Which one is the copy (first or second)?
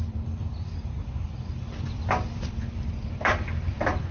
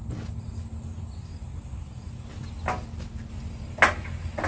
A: first